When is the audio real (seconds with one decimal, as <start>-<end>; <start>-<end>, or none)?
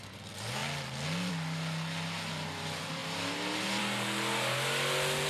0.0-5.3